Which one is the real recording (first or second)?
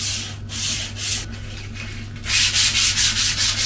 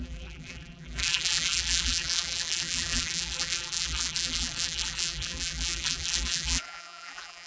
first